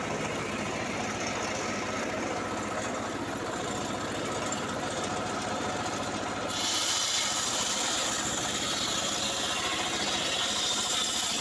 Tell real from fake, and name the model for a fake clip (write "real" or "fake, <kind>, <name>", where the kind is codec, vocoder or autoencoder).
real